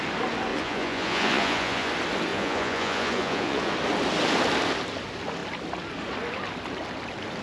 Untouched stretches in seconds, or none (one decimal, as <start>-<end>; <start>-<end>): 0.0-0.5; 1.9-2.3; 3.7-7.4